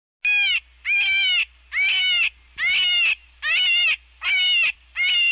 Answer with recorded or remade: recorded